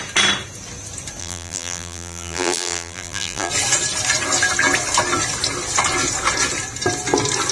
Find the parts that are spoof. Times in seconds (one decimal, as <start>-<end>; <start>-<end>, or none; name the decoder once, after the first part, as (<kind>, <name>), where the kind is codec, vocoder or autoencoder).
1.2-3.5 (vocoder, BigVGAN v2)